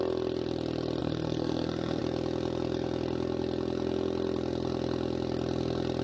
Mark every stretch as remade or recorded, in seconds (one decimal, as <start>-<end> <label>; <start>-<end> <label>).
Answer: 0.0-1.0 recorded; 1.0-2.0 remade; 2.0-6.0 recorded